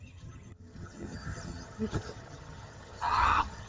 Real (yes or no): no